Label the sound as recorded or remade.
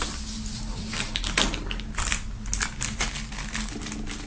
recorded